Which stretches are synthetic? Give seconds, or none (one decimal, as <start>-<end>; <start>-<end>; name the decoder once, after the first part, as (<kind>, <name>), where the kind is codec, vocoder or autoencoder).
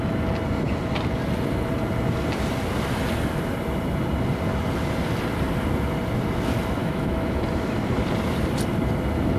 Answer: 6.8-7.4 (autoencoder, DAC-VAE)